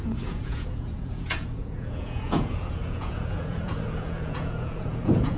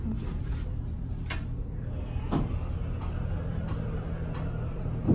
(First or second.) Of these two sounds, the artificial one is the first